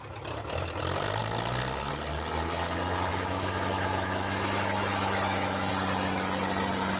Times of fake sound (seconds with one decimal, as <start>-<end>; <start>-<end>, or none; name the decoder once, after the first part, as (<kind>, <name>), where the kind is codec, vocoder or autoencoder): 3.1-5.7 (autoencoder, DAC-VAE)